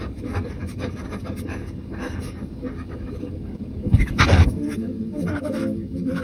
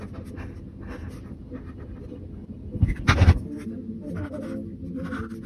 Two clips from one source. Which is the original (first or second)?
second